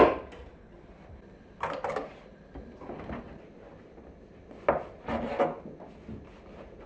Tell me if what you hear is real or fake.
real